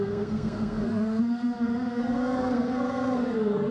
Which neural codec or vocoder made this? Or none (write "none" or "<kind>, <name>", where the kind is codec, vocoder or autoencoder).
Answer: codec, SNAC